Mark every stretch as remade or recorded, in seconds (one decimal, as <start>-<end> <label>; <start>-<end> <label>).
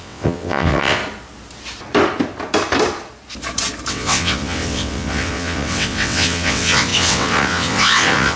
0.0-1.0 remade; 1.0-3.9 recorded; 3.9-8.4 remade